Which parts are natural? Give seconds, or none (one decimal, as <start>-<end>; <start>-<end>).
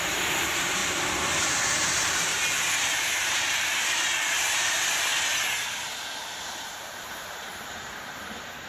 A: 0.8-1.4; 2.3-2.8; 5.1-6.3